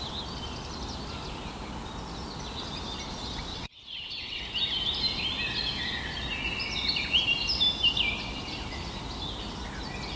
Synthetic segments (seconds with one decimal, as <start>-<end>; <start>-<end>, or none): 3.5-4.4